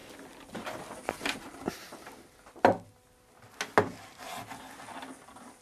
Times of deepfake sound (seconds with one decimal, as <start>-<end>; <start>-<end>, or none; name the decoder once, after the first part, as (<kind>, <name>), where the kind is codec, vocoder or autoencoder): none